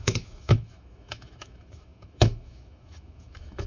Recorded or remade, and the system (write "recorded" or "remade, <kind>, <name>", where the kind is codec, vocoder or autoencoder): remade, autoencoder, DAC-VAE